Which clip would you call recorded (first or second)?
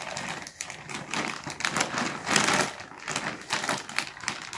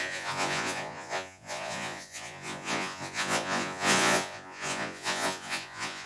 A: first